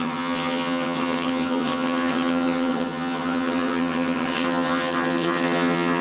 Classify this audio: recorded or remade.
remade